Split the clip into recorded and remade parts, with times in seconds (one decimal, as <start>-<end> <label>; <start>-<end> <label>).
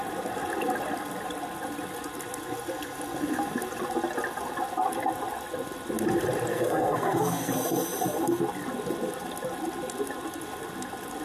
0.0-6.5 recorded; 6.5-7.5 remade; 7.5-11.2 recorded